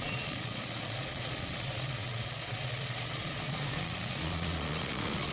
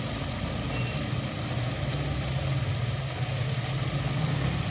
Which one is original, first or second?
second